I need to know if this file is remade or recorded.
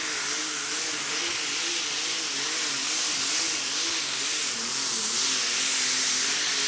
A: recorded